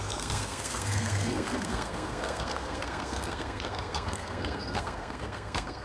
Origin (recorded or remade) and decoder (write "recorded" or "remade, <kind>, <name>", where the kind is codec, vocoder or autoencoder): remade, codec, SNAC